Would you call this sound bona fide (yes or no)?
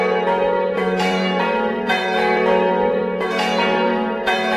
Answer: no